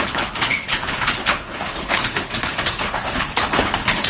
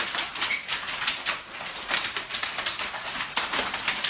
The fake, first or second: first